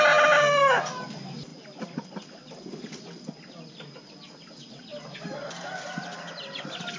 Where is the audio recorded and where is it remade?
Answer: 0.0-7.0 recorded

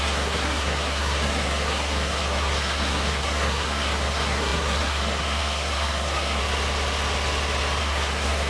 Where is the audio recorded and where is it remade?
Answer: 0.0-6.4 remade; 6.4-7.8 recorded; 7.8-8.5 remade

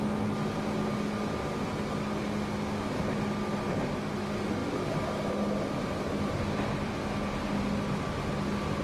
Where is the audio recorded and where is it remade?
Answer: 0.0-8.8 recorded

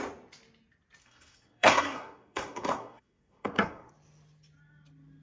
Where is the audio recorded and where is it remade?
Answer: 0.0-1.0 recorded; 1.0-3.9 remade; 3.9-5.2 recorded